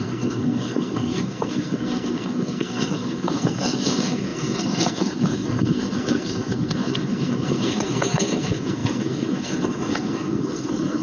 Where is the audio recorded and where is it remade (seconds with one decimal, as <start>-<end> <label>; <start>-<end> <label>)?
0.0-11.0 remade